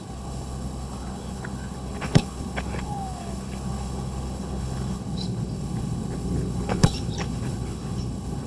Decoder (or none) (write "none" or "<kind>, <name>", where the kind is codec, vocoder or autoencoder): codec, HILCodec